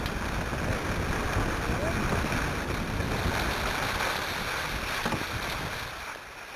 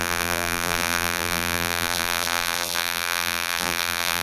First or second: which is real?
first